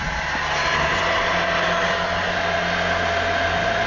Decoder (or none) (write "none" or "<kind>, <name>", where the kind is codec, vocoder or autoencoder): none